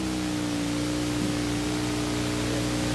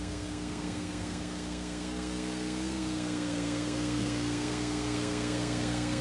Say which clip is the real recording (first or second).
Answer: first